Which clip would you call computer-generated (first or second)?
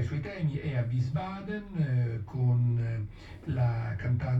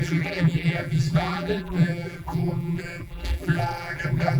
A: second